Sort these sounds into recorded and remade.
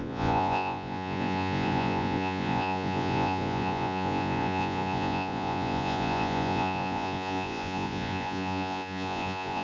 remade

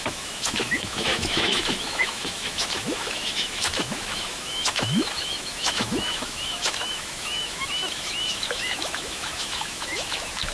remade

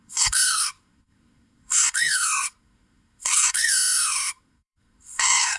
remade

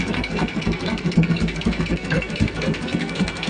remade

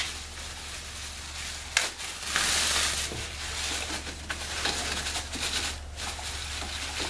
recorded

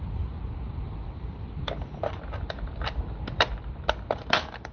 remade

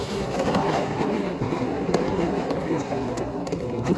remade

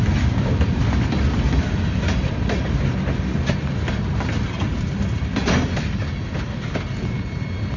recorded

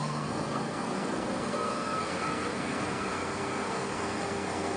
remade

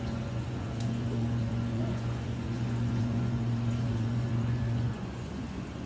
remade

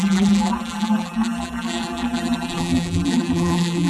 remade